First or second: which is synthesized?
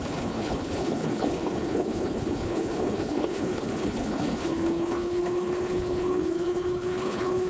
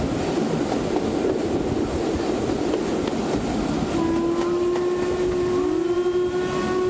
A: first